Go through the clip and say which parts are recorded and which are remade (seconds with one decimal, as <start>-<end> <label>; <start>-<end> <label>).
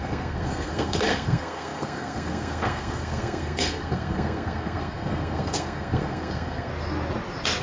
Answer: 0.0-6.7 remade; 6.7-7.6 recorded